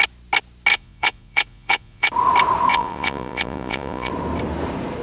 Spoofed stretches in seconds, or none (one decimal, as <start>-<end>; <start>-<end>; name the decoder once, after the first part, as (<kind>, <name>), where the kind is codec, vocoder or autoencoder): 0.7-2.1 (vocoder, Vocos); 2.7-4.1